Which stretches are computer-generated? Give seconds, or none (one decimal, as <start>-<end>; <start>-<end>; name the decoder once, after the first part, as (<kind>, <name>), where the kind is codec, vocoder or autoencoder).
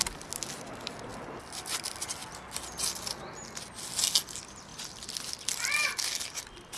none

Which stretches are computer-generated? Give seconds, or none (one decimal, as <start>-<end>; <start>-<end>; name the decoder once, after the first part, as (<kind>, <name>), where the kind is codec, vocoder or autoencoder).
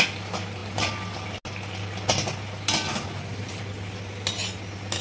none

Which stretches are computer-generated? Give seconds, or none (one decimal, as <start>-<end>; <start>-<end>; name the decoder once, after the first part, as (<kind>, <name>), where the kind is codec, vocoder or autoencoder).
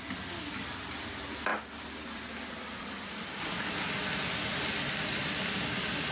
none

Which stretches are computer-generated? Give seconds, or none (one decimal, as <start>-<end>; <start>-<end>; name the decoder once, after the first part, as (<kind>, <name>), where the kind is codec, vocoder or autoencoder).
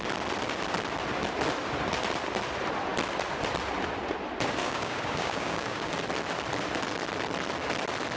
4.6-5.9 (codec, DAC)